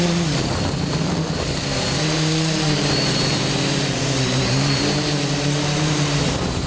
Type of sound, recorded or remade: remade